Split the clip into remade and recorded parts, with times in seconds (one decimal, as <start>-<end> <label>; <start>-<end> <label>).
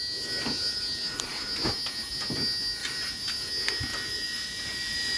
0.0-2.8 recorded; 2.8-3.5 remade; 3.5-3.9 recorded; 3.9-5.2 remade